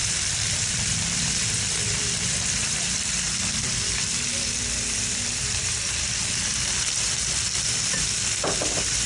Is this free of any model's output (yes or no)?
no